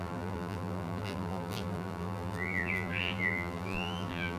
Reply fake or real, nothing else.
fake